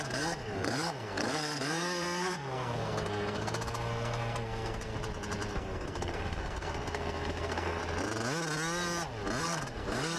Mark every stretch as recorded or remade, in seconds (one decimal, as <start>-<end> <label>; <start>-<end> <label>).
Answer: 0.0-4.9 remade; 4.9-5.5 recorded; 5.5-7.8 remade; 7.8-9.4 recorded; 9.4-10.2 remade